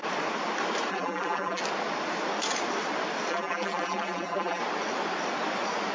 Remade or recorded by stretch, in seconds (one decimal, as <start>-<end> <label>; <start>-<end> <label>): 0.0-0.9 recorded; 0.9-1.6 remade; 1.6-3.3 recorded; 3.3-4.6 remade; 4.6-5.9 recorded